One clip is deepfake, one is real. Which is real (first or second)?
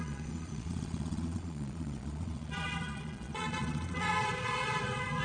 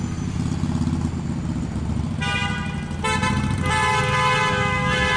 second